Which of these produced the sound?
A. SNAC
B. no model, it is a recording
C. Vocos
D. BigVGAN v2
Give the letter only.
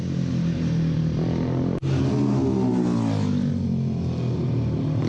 B